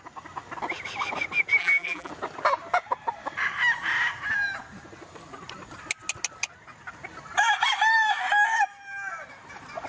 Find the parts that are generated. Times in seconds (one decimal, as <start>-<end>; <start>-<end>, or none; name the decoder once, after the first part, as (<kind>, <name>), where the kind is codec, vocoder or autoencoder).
1.6-2.1 (vocoder, BigVGAN v2)